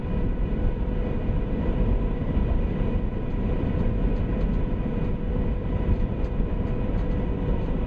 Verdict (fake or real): fake